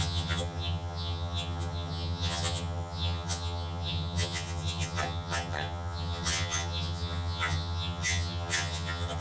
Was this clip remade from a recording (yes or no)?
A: yes